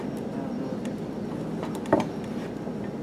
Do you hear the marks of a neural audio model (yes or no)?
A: no